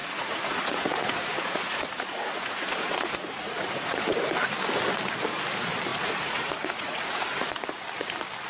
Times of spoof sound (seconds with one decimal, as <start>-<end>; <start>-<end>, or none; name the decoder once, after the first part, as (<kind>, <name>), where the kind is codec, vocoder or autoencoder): 0.0-4.0 (vocoder, Vocos); 5.9-7.7